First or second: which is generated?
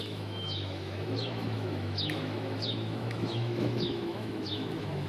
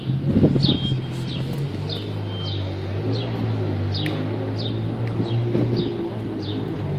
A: first